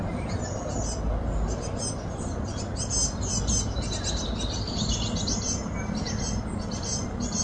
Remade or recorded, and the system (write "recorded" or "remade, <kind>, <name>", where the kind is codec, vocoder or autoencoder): recorded